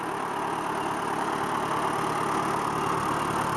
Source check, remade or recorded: recorded